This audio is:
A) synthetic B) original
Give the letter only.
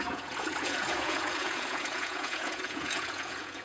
A